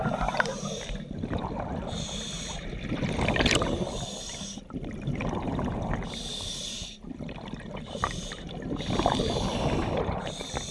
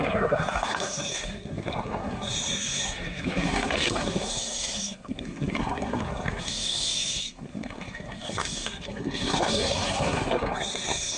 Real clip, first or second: first